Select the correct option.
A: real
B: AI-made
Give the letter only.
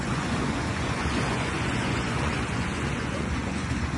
B